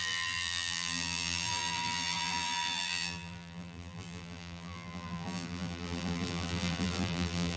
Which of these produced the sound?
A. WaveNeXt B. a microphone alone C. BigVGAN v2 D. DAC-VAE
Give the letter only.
C